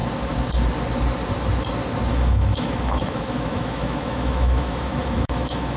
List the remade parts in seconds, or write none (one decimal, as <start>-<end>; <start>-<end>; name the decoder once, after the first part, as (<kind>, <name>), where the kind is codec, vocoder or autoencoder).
2.1-5.8 (autoencoder, DAC-VAE)